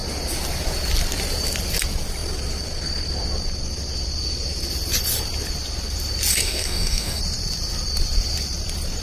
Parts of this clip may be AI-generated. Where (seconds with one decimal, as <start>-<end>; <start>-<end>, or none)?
6.3-7.2